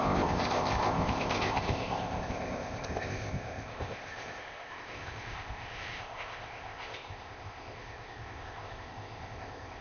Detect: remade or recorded remade